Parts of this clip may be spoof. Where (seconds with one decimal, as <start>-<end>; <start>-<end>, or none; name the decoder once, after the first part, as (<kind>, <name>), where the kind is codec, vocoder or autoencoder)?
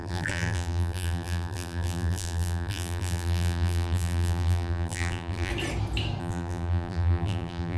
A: 0.0-5.5 (vocoder, BigVGAN v2); 6.2-7.8